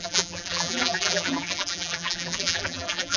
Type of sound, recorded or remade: remade